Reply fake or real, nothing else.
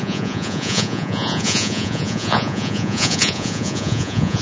fake